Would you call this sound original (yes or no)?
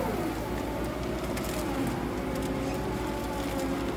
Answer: yes